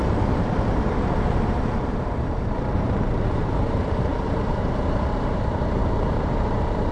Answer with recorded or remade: remade